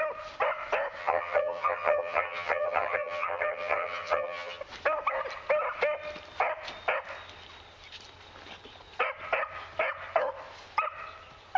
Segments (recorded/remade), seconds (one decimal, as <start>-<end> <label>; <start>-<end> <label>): 0.0-1.0 recorded; 1.0-4.6 remade; 4.6-11.6 recorded